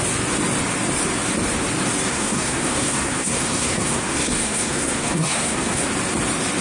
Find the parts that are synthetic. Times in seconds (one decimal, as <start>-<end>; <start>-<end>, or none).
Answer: 2.1-5.9